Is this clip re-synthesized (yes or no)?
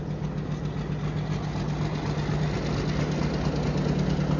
no